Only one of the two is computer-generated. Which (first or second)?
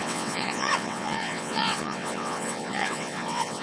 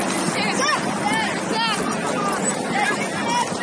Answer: first